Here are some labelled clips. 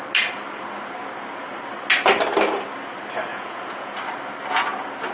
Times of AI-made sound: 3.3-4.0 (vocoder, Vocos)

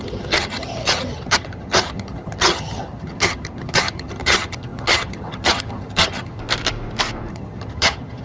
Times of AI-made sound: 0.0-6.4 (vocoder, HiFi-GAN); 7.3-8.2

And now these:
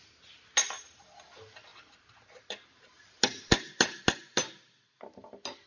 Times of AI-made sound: none